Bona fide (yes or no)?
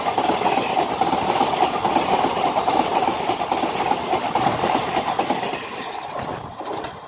no